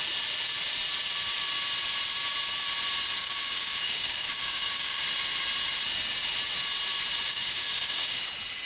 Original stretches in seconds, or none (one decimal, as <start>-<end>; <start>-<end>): 0.0-3.2; 5.0-7.3; 8.2-8.7